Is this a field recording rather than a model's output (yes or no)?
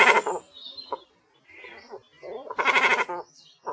yes